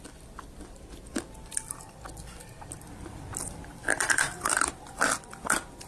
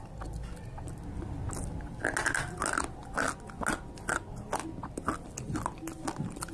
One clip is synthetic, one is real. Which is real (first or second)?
second